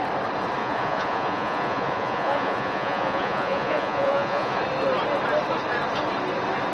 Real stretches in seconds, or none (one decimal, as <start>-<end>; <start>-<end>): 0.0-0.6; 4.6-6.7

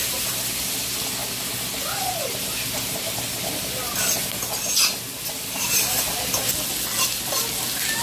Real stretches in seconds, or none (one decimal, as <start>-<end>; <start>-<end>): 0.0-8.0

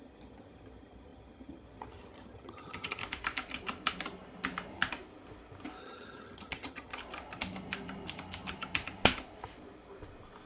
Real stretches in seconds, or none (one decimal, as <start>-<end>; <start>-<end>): 3.0-5.8; 6.9-10.5